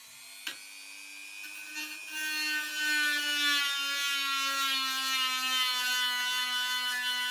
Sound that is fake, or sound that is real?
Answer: real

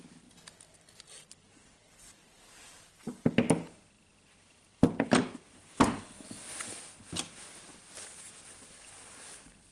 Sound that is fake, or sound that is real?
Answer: real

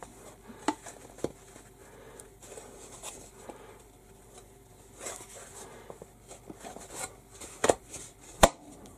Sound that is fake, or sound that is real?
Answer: fake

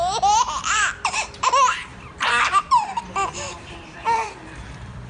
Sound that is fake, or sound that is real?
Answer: fake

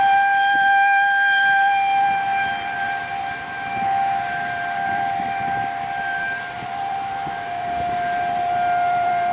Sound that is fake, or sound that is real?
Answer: fake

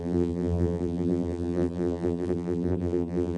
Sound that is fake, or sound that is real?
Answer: fake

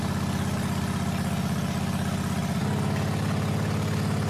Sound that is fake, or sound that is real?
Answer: real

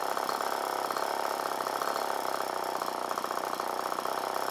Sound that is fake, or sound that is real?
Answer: real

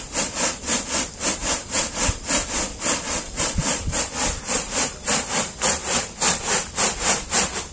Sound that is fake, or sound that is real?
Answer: real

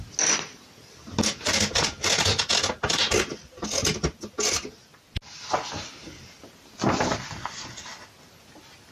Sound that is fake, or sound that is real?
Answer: real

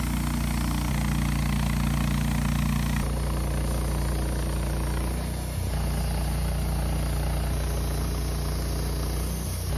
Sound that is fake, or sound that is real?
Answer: real